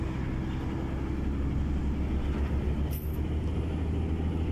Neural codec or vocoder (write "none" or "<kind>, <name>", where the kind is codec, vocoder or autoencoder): none